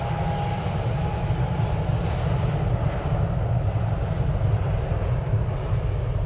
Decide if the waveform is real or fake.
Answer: real